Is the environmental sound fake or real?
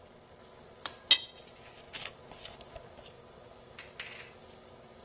real